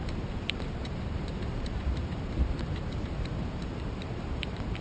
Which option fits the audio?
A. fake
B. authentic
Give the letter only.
A